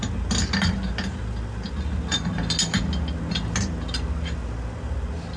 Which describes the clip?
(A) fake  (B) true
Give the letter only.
B